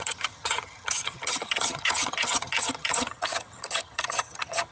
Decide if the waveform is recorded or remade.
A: remade